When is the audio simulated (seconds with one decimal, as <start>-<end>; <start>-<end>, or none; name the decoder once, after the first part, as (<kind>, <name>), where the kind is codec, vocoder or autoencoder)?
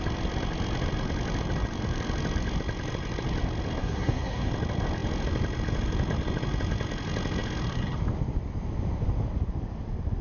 3.8-4.5 (codec, SNAC)